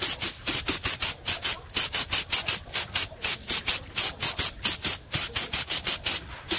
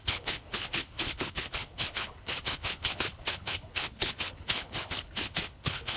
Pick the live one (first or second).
first